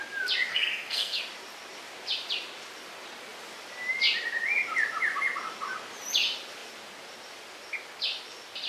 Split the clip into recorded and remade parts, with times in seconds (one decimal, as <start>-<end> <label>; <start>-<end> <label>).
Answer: 0.0-0.5 recorded; 0.5-1.2 remade; 1.2-8.7 recorded